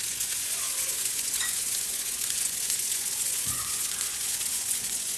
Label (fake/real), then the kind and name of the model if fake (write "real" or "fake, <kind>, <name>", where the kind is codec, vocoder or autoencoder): fake, vocoder, Vocos